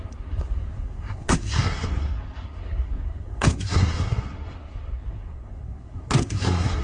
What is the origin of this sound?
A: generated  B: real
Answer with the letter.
A